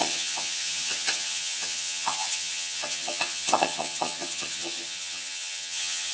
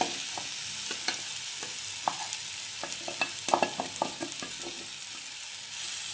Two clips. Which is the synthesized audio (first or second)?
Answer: first